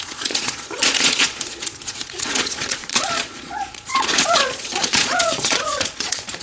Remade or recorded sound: remade